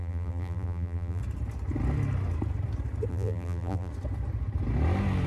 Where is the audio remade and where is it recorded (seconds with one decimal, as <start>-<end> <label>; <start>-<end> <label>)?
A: 0.0-1.2 remade; 1.2-3.1 recorded; 3.1-3.9 remade; 3.9-5.3 recorded